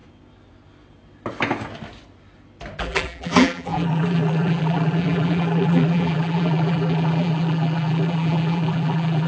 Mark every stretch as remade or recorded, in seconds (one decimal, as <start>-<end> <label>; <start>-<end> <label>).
0.0-2.8 recorded; 2.8-9.3 remade